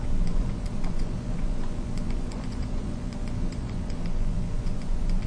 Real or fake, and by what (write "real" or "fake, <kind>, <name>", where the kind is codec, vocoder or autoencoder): fake, vocoder, Vocos